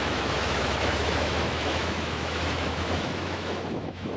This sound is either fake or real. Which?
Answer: fake